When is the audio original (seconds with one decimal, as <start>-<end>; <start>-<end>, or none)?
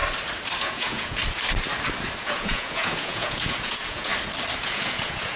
0.0-0.6; 1.2-2.2; 4.1-4.6